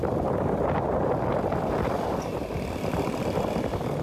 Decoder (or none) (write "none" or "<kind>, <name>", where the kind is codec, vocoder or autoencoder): none